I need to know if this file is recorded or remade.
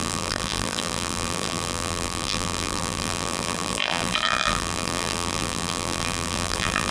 remade